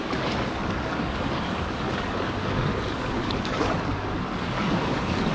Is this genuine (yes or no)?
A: no